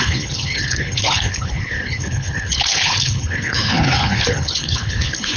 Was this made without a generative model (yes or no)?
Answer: no